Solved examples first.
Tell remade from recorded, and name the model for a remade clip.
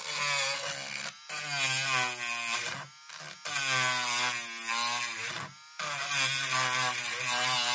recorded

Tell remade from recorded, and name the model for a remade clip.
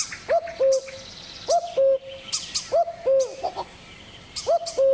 recorded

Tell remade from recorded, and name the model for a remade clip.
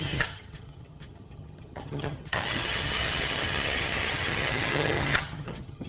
remade, vocoder, HiFi-GAN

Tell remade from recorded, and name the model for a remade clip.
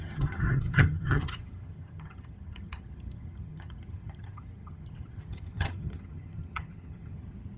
remade, vocoder, HiFi-GAN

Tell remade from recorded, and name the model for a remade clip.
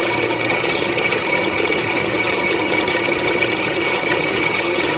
remade, vocoder, HiFi-GAN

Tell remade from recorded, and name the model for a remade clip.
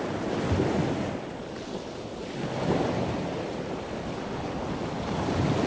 recorded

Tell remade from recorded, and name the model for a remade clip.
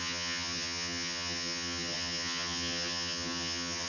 remade, vocoder, HiFi-GAN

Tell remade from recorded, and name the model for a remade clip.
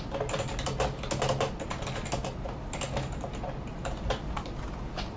recorded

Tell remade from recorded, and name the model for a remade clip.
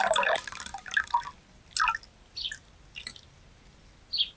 recorded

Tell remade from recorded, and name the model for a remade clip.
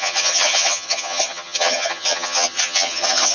remade, vocoder, HiFi-GAN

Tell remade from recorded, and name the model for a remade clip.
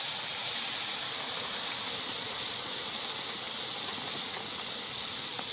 recorded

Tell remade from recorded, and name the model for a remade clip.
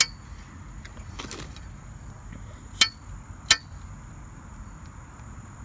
recorded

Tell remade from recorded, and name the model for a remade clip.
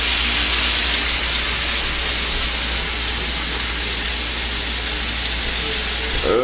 recorded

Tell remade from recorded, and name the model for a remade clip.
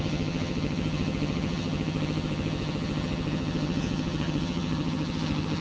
remade, vocoder, HiFi-GAN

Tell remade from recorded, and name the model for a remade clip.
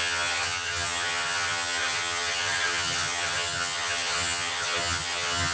remade, vocoder, HiFi-GAN